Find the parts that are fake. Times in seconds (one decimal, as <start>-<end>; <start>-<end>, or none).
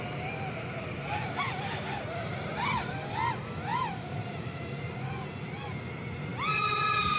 3.7-4.8